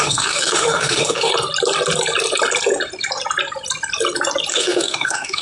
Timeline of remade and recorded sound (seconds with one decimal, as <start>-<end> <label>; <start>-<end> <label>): 0.0-1.3 remade; 1.3-4.5 recorded; 4.5-5.4 remade